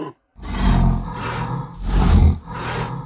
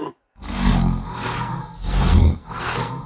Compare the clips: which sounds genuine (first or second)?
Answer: first